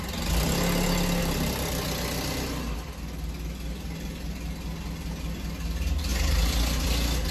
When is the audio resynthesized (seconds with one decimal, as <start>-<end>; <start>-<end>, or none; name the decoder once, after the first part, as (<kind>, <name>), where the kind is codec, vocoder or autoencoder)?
none